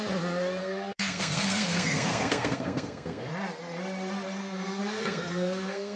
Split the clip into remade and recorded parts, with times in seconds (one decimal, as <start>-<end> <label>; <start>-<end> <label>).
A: 0.0-0.6 recorded; 0.6-3.3 remade; 3.3-4.4 recorded; 4.4-6.0 remade